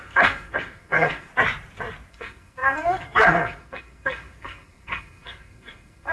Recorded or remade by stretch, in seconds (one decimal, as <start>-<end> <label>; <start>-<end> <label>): 0.0-1.3 remade; 1.3-2.1 recorded; 2.1-6.1 remade